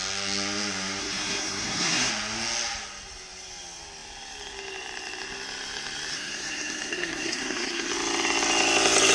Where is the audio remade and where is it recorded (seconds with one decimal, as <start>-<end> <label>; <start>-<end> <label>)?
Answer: 0.0-1.0 recorded; 1.0-2.1 remade; 2.1-6.1 recorded; 6.1-7.9 remade; 7.9-9.1 recorded